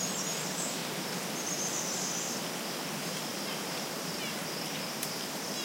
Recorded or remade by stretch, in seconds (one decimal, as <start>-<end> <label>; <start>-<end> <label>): 0.0-0.8 remade; 0.8-3.2 recorded; 3.2-5.6 remade